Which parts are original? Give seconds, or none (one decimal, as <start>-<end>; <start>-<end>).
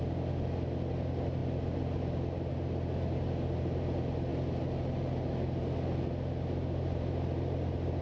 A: 0.0-8.0